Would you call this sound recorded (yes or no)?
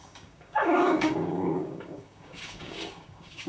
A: no